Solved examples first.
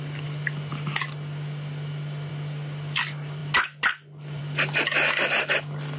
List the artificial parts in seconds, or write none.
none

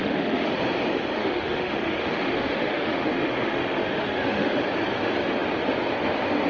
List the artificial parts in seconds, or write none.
0.0-0.5; 1.2-4.6